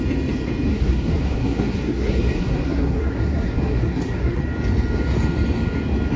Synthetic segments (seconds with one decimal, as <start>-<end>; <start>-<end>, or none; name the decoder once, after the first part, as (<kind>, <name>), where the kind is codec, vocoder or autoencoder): 0.7-4.4 (codec, SNAC)